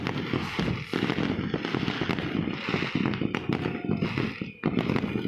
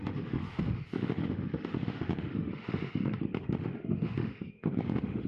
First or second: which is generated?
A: second